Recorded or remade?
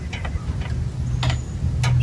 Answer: recorded